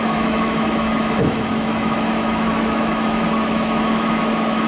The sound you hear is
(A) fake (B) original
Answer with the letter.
A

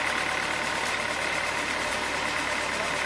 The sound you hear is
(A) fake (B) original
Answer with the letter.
B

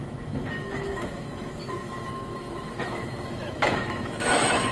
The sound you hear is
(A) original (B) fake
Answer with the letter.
B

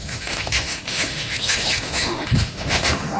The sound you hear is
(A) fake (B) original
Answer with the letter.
A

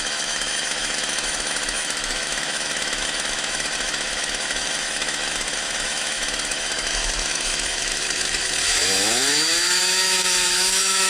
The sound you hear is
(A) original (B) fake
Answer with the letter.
B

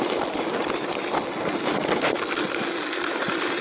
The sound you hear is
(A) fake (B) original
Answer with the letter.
B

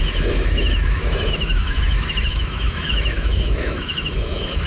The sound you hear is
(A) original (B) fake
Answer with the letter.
B